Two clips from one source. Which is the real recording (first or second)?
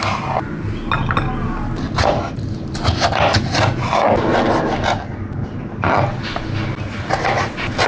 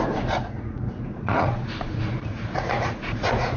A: first